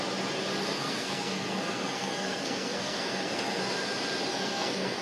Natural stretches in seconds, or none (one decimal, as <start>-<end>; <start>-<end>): 0.0-0.6; 3.6-4.3

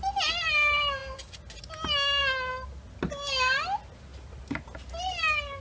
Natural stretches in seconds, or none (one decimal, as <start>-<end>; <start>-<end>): 0.0-5.6

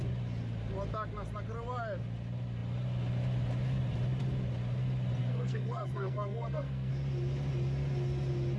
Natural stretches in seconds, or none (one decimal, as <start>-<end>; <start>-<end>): 0.0-5.2; 6.9-8.6

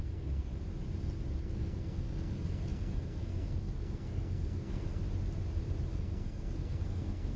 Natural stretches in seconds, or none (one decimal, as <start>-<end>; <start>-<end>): 0.5-1.4; 5.0-5.9

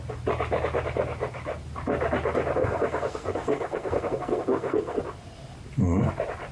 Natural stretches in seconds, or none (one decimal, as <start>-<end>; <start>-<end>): 0.0-2.6; 5.0-6.5